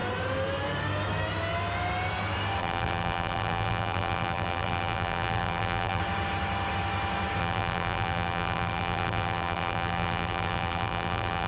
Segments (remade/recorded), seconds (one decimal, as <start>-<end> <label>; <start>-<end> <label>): 0.0-2.6 recorded; 2.6-6.0 remade; 6.0-7.4 recorded; 7.4-11.5 remade